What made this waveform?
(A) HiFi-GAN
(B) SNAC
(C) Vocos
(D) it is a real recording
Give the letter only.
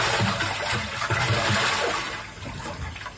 D